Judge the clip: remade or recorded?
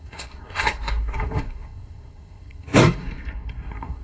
remade